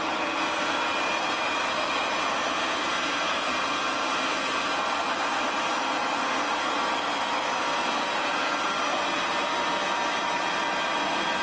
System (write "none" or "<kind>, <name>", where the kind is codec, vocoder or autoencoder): none